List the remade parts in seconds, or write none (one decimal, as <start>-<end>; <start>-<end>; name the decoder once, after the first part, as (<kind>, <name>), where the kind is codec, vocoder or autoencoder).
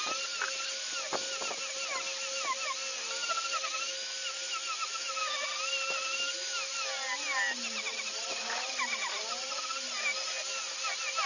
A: none